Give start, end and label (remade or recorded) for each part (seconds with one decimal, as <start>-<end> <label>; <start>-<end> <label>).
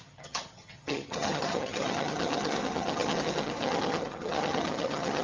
0.0-5.2 remade